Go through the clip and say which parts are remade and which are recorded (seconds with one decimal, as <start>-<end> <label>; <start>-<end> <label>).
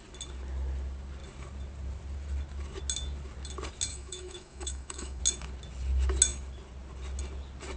0.0-3.9 recorded; 3.9-5.2 remade; 5.2-7.8 recorded